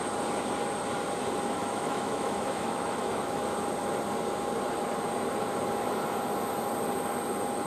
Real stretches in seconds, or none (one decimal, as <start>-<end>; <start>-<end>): 0.0-1.6; 3.4-7.7